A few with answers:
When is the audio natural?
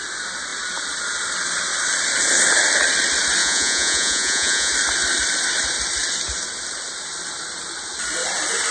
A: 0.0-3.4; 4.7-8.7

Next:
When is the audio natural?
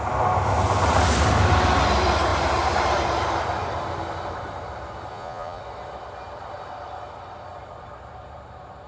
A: 0.0-5.1; 5.6-8.9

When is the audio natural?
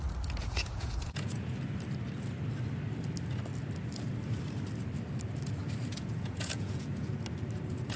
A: 0.0-0.4; 1.5-5.9; 7.1-8.0